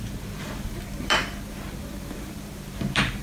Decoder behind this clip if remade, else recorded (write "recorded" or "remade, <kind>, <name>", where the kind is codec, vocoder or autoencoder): remade, vocoder, BigVGAN v2